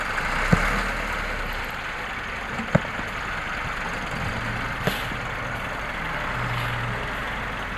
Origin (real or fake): real